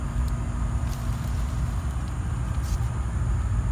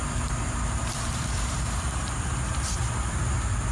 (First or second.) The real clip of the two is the first